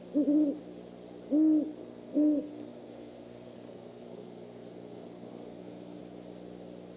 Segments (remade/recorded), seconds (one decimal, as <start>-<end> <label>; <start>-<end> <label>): 0.0-1.8 recorded; 1.8-6.0 remade; 6.0-7.0 recorded